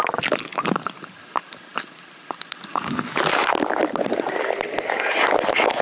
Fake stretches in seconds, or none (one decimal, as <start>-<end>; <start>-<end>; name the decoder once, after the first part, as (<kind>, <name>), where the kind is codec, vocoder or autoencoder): none